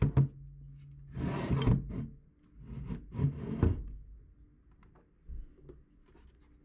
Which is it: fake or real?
real